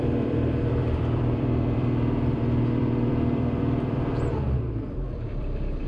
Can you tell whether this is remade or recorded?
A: remade